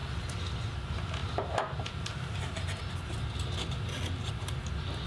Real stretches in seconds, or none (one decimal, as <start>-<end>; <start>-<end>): 0.0-1.2; 2.8-5.1

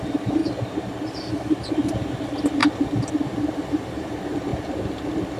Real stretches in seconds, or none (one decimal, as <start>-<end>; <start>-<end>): 0.4-1.7

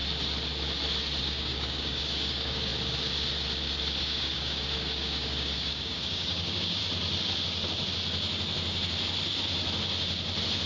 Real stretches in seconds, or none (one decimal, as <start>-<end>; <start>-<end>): 0.0-1.2; 2.7-4.0; 6.8-10.7

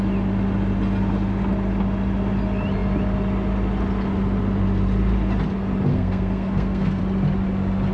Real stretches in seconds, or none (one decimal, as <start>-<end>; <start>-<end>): 0.0-5.9; 7.0-7.9

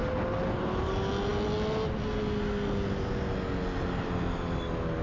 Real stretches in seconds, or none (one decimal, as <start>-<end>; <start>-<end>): 0.0-5.0

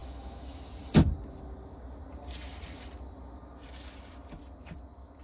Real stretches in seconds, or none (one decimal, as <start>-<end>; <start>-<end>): 0.6-5.2